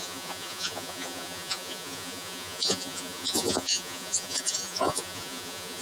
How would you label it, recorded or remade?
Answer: remade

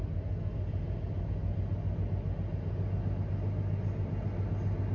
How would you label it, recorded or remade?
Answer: recorded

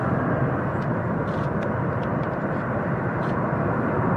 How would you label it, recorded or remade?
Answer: remade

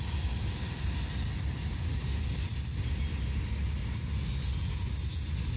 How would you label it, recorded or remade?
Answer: recorded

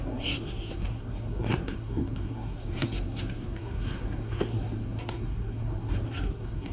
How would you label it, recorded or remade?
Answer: remade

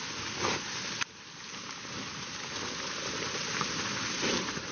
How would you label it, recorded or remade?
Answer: recorded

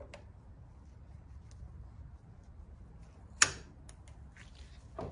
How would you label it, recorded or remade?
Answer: recorded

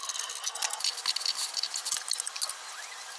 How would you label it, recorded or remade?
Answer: recorded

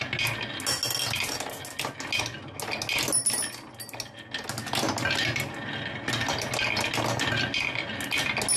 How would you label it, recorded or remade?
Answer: recorded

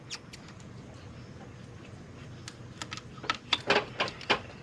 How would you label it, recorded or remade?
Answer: recorded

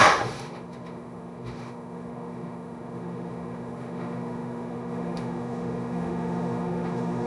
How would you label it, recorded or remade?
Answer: remade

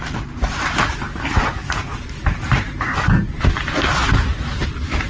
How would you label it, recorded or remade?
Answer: recorded